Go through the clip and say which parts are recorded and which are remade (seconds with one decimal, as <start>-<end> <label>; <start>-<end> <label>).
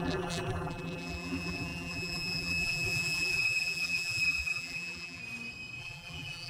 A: 0.0-5.2 remade; 5.2-5.8 recorded; 5.8-6.5 remade